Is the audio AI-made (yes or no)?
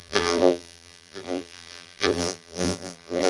yes